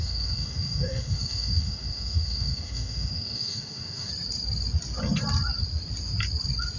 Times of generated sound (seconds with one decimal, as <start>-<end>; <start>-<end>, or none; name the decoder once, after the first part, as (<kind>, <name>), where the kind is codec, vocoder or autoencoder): 0.0-4.1 (autoencoder, DAC-VAE)